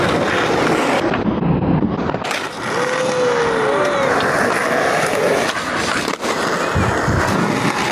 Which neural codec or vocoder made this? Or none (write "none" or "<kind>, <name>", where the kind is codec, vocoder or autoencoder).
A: none